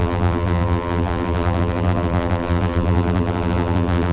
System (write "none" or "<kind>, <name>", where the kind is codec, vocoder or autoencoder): vocoder, BigVGAN v2